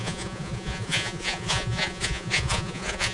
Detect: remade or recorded remade